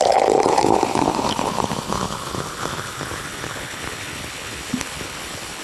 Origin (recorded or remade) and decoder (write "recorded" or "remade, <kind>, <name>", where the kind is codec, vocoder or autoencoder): remade, codec, HILCodec